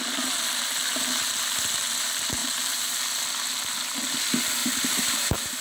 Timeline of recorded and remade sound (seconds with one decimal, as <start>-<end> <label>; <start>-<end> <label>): 0.0-2.4 recorded; 2.4-3.0 remade; 3.0-4.6 recorded; 4.6-5.6 remade